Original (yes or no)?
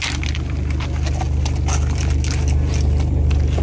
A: yes